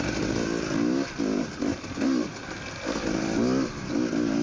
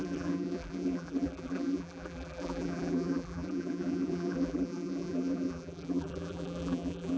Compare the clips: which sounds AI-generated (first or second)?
second